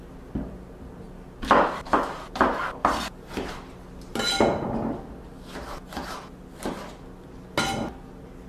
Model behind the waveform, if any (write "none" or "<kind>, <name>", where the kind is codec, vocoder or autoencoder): none